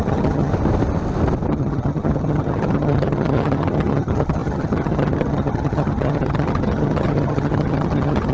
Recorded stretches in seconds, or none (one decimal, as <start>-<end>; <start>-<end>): 0.5-1.5